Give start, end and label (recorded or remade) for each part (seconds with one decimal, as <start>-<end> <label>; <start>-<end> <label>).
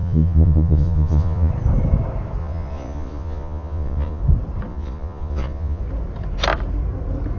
0.0-1.5 remade; 1.5-2.4 recorded; 2.4-4.2 remade; 4.2-4.7 recorded; 4.7-5.8 remade; 5.8-7.4 recorded